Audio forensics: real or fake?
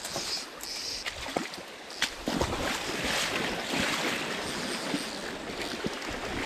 real